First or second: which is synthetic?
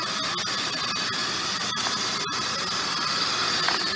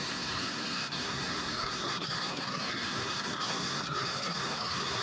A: second